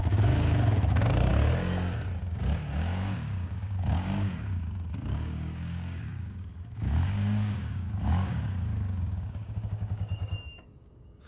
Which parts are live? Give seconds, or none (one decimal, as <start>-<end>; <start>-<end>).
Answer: 1.3-2.2